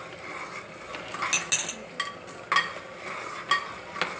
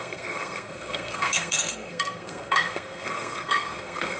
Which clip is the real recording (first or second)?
first